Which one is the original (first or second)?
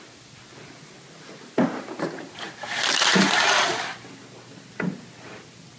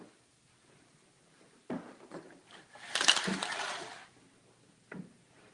first